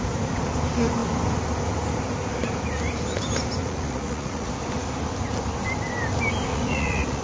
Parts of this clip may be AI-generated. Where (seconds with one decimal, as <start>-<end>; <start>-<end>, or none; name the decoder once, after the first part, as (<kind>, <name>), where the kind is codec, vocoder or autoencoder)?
3.6-4.5 (vocoder, Vocos); 6.5-7.2